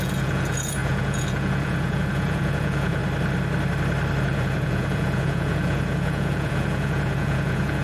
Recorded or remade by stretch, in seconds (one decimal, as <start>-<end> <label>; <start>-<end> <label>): 0.0-3.0 remade; 3.0-4.2 recorded; 4.2-7.8 remade